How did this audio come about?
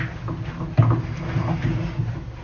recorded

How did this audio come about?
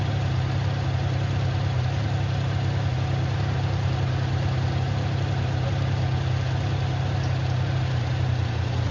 recorded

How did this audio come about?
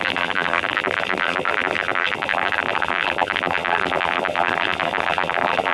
remade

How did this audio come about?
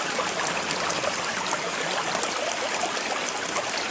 recorded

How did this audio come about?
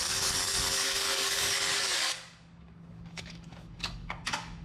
remade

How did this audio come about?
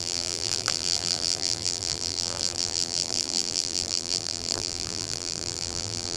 remade